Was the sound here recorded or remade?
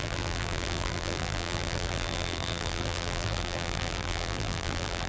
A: remade